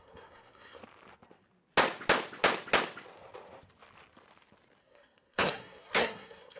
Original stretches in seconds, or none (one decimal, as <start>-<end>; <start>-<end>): 0.8-4.8